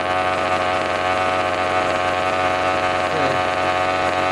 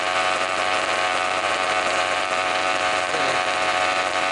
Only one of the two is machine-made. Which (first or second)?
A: second